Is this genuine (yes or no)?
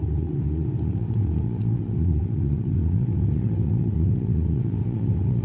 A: no